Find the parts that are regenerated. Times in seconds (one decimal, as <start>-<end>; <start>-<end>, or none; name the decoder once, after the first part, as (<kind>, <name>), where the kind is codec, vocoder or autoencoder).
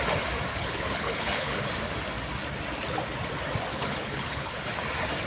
0.5-1.7 (codec, HILCodec); 3.7-4.6